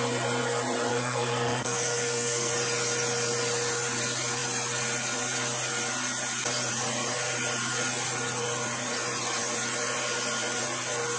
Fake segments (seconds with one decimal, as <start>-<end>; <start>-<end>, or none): 0.9-2.5